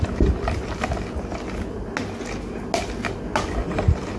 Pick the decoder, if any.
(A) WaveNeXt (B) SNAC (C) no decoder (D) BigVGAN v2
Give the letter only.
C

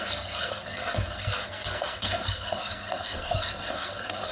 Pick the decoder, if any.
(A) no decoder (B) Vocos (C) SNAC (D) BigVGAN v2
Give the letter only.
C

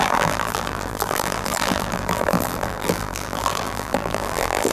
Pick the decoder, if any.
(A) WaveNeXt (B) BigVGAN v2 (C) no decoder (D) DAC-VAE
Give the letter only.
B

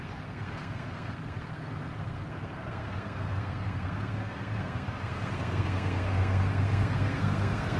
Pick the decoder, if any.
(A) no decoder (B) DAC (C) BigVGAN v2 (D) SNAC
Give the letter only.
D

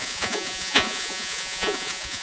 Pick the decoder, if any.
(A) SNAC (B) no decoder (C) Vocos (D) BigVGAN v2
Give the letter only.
C